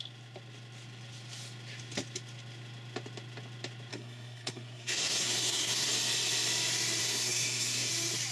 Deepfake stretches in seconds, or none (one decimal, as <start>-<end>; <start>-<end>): 3.9-5.9; 7.0-7.9